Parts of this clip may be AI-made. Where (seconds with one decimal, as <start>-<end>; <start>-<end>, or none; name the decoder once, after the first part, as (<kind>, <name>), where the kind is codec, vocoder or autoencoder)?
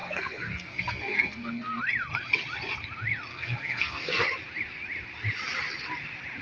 0.0-1.8 (codec, SNAC); 3.3-4.2